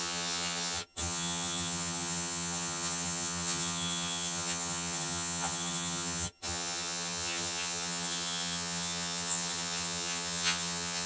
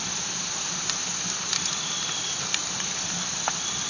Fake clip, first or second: first